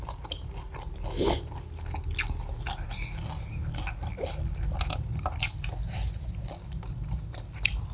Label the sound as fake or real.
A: real